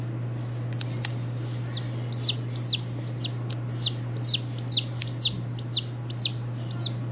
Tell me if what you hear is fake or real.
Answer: real